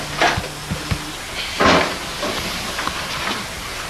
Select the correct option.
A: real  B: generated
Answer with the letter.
A